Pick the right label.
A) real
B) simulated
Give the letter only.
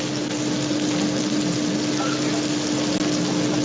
A